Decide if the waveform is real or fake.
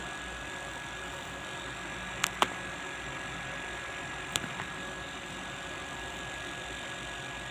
real